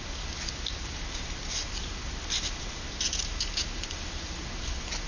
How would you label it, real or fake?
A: real